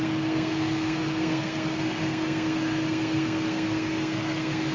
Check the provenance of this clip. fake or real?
fake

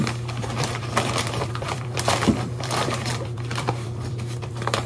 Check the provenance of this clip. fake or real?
fake